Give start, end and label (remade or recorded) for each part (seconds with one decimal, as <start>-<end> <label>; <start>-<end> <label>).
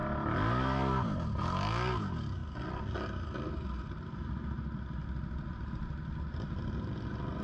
0.0-7.4 recorded